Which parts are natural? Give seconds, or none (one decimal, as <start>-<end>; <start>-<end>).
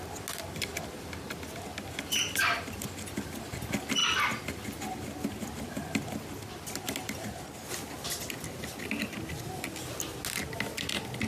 0.0-11.3